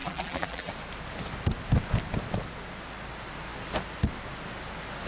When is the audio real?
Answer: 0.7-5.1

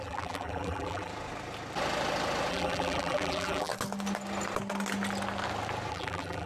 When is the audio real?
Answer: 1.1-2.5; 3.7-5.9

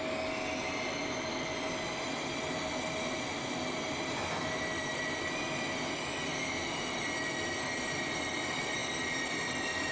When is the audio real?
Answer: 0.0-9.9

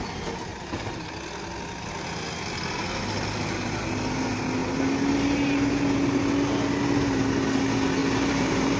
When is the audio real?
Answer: 0.0-0.5; 1.1-8.0

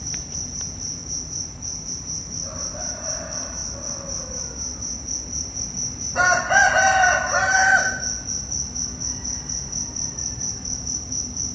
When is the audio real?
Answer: 1.0-1.9; 3.6-5.6; 7.6-10.1